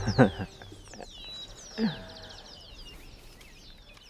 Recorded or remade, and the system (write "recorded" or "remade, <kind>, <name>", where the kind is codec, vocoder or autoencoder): recorded